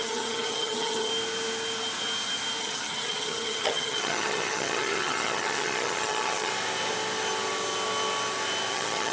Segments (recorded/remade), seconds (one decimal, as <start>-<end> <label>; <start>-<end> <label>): 0.0-1.1 remade; 1.1-2.6 recorded; 2.6-6.5 remade; 6.5-8.7 recorded; 8.7-9.1 remade